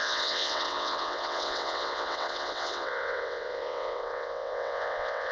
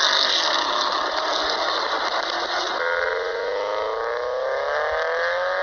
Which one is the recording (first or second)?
second